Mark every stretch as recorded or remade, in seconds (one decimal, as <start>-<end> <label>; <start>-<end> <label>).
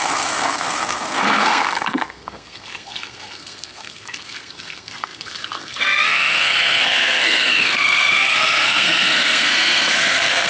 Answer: 0.0-10.5 remade